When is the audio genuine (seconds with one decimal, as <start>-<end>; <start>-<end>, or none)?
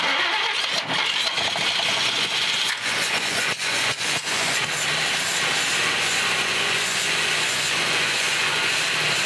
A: 0.0-1.9; 4.6-5.8; 8.8-9.3